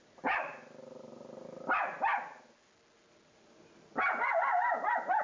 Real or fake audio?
real